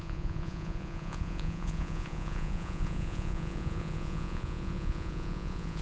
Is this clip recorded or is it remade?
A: remade